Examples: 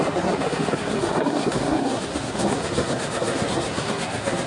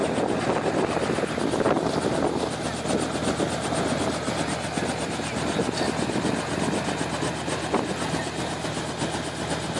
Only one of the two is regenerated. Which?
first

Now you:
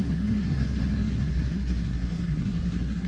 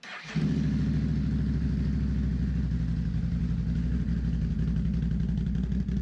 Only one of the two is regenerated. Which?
first